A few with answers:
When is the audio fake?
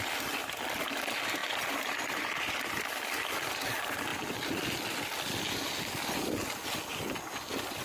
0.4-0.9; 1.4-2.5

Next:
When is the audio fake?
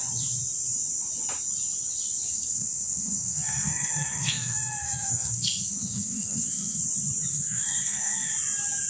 2.3-6.8; 7.3-8.3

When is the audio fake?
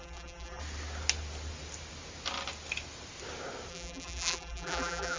0.0-0.6; 3.7-5.2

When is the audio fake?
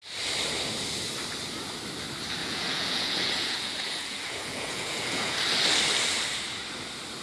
2.4-5.4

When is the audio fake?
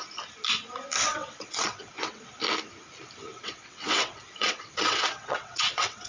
1.1-2.2; 3.3-6.1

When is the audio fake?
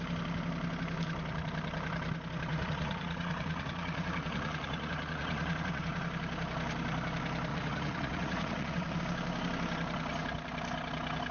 2.5-6.0; 7.5-9.0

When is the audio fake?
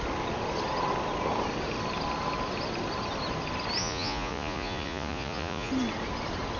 3.8-5.7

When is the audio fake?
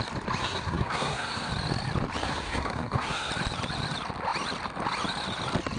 0.4-1.5; 2.2-3.3